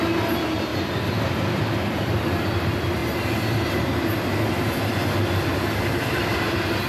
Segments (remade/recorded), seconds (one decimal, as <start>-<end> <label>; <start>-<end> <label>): 0.0-0.7 recorded; 0.7-1.2 remade; 1.2-6.9 recorded